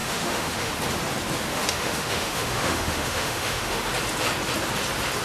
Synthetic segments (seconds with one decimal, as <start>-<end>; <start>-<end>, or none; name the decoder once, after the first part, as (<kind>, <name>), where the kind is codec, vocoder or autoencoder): 0.0-0.7 (autoencoder, DAC-VAE); 1.5-3.8